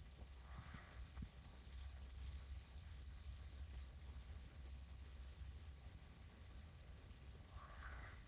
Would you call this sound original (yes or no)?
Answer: no